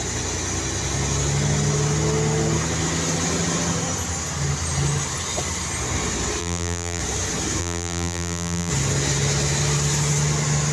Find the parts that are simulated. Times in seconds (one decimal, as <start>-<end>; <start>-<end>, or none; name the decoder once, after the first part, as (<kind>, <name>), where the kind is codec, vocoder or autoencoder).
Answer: 6.4-7.0 (vocoder, BigVGAN v2); 7.6-8.7